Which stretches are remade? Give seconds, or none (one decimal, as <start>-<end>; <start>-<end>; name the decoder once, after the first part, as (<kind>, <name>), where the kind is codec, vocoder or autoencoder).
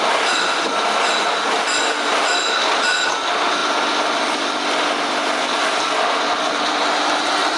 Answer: none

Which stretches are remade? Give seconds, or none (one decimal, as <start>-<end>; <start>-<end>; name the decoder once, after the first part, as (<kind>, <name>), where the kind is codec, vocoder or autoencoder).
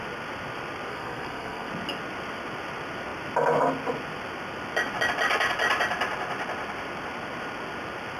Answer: 0.9-1.7 (codec, SNAC)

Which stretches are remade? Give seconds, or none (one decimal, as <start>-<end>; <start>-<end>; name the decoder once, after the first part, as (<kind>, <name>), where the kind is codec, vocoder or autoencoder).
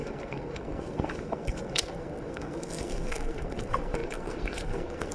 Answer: 0.0-5.1 (codec, SNAC)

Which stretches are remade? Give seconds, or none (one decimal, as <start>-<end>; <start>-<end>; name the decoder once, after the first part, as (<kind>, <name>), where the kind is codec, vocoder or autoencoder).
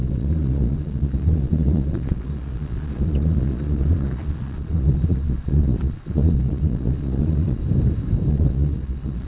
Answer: 0.0-7.6 (vocoder, Vocos); 8.3-9.3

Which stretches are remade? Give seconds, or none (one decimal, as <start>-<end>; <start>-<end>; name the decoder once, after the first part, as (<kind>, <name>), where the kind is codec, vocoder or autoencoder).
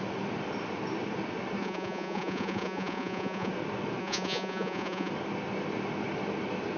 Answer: 1.6-3.5 (vocoder, Vocos); 4.0-5.1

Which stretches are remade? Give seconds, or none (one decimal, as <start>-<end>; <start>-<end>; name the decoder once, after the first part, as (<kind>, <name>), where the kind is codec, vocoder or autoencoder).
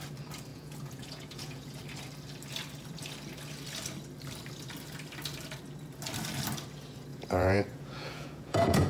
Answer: 0.5-1.8 (vocoder, Vocos); 7.1-8.9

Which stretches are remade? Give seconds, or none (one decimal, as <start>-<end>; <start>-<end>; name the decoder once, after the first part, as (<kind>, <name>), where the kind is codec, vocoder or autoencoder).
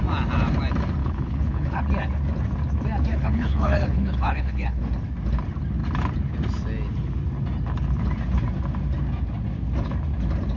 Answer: 1.0-1.8 (codec, HILCodec); 3.1-4.8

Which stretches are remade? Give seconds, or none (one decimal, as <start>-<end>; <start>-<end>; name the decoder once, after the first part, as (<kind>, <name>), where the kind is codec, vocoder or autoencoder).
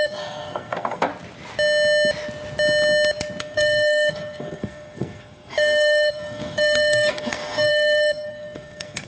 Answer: 0.0-1.1 (codec, SNAC); 3.4-9.1